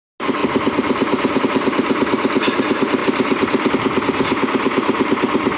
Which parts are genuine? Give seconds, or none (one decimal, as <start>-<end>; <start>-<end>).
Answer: 0.0-3.0; 3.7-5.6